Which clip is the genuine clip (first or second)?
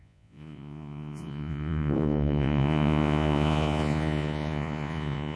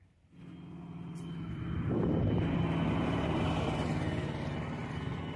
second